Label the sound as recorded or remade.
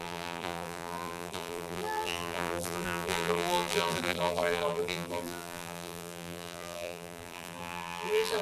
remade